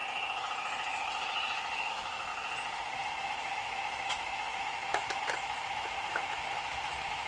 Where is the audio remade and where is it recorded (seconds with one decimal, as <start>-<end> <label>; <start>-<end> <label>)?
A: 0.0-1.9 recorded; 1.9-2.3 remade; 2.3-3.1 recorded; 3.1-7.3 remade